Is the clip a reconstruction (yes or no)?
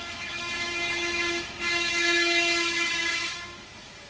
yes